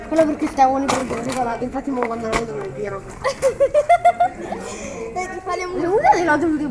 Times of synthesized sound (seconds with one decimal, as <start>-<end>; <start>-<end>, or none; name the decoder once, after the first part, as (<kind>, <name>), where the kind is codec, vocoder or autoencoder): 1.0-3.1 (codec, SNAC)